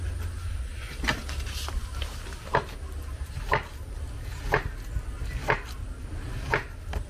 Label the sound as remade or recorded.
recorded